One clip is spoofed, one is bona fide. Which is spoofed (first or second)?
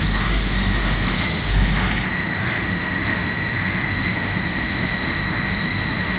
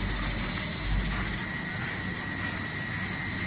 first